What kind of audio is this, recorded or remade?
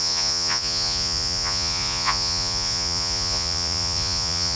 remade